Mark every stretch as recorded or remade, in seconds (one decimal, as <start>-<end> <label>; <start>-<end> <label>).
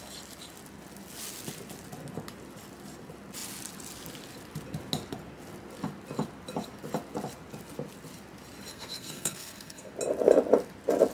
0.0-8.7 recorded; 8.7-9.9 remade; 9.9-11.1 recorded